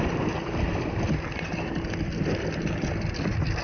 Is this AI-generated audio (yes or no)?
no